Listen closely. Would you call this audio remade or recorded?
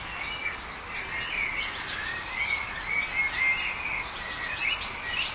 recorded